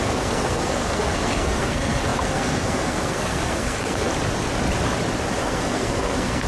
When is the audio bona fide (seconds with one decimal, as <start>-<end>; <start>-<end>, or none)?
4.1-5.4